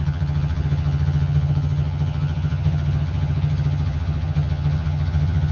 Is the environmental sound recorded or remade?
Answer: remade